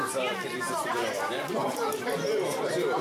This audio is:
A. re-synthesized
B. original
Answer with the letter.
A